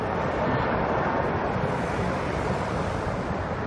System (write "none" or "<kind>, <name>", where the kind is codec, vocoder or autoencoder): none